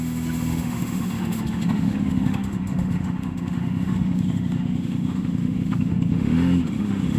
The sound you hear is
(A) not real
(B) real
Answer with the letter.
A